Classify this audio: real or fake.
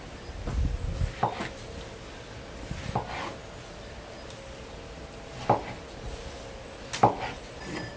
real